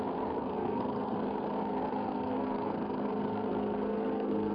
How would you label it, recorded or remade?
remade